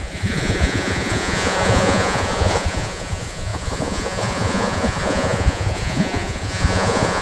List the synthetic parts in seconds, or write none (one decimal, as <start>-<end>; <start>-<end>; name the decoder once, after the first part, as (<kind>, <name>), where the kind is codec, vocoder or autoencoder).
0.0-7.2 (vocoder, Vocos)